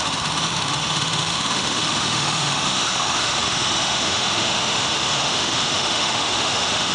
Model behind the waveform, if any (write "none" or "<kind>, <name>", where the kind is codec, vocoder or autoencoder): autoencoder, DAC-VAE